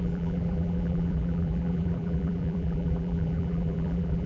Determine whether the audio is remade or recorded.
remade